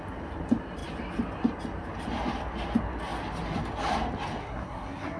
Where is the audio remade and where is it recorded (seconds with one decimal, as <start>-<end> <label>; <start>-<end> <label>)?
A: 0.0-4.4 recorded; 4.4-5.2 remade